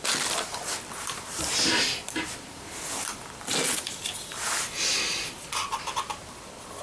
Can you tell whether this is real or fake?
fake